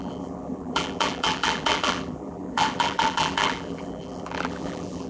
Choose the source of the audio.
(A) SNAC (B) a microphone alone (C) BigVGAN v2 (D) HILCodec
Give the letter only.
C